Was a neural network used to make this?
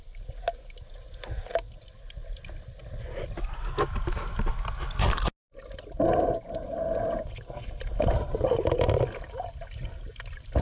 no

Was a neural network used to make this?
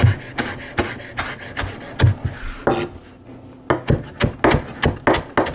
no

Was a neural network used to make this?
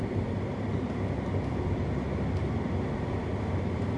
no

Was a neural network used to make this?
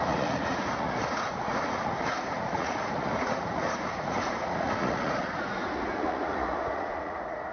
yes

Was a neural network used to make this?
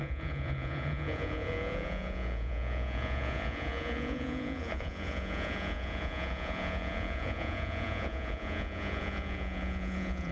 yes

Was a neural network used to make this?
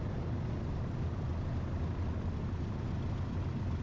no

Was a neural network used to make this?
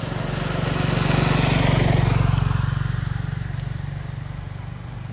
no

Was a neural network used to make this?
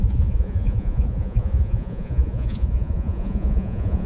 yes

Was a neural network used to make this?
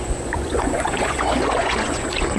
yes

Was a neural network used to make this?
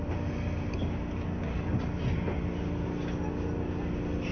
no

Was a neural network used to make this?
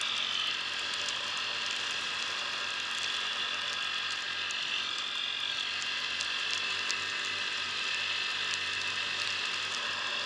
no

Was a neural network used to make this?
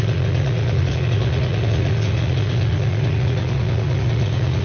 yes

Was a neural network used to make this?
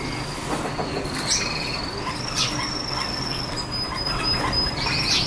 no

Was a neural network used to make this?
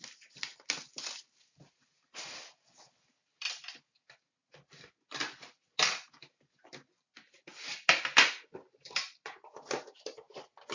no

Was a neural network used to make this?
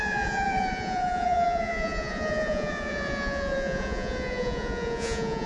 yes